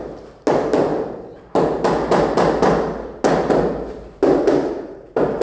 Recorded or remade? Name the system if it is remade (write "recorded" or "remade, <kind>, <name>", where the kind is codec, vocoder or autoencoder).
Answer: recorded